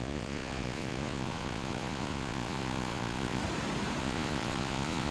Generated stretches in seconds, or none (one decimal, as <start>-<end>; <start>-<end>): 0.0-3.4; 4.0-5.1